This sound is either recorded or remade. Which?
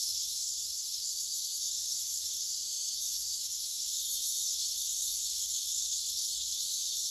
remade